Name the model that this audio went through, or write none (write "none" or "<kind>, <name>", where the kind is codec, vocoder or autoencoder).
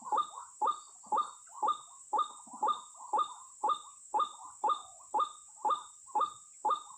none